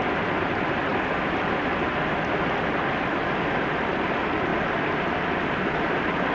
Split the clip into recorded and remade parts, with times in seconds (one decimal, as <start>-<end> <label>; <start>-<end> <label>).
0.0-6.3 recorded